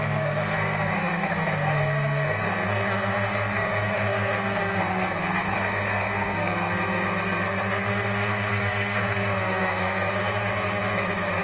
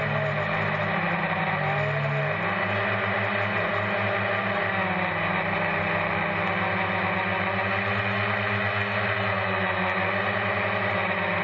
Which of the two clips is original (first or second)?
second